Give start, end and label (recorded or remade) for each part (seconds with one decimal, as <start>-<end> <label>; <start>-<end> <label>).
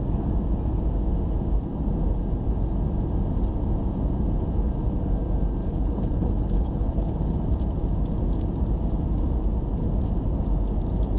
0.0-5.6 recorded; 5.6-7.4 remade; 7.4-11.2 recorded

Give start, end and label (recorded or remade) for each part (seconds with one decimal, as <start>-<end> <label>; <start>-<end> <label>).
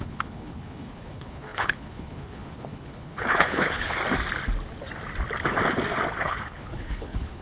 0.0-4.0 remade; 4.0-6.2 recorded; 6.2-7.4 remade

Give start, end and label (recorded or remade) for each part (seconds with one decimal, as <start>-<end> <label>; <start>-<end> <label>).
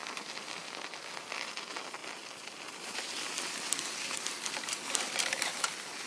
0.0-6.1 recorded